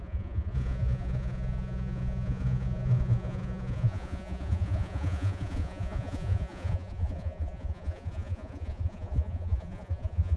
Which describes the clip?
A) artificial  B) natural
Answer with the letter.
A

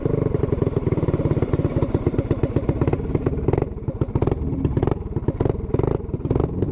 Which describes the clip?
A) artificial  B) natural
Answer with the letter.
B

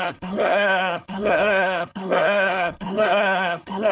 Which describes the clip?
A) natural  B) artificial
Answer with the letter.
B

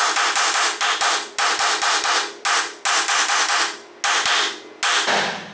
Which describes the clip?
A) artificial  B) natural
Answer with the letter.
B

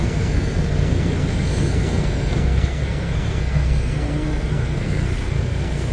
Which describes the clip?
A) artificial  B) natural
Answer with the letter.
A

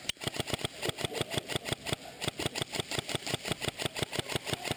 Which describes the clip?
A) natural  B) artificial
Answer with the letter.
A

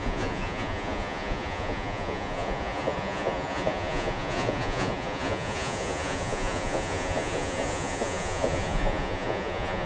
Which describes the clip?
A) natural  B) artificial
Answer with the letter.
B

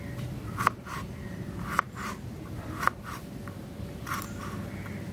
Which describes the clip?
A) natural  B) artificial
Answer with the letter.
A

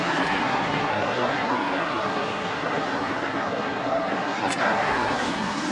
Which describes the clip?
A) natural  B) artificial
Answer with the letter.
B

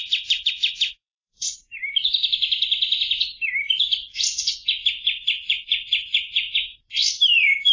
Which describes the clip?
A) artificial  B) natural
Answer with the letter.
A